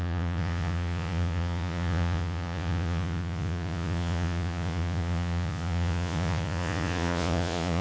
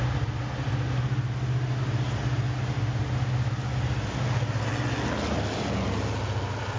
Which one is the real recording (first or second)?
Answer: second